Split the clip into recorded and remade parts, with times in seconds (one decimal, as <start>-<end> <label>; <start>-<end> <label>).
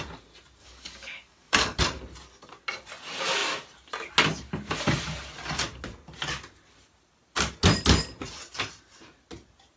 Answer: 0.0-0.6 recorded; 0.6-1.8 remade; 1.8-9.8 recorded